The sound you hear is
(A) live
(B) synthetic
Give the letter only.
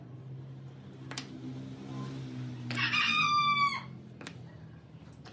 A